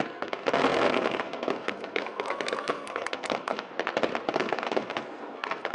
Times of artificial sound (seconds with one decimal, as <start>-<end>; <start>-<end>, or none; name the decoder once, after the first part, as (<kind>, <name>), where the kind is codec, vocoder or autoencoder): 0.0-3.7 (codec, SNAC); 4.3-5.7

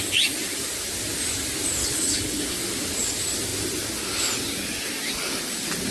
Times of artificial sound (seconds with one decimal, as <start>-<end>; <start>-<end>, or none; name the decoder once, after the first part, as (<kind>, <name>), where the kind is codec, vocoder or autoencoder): 1.8-2.6 (codec, HILCodec)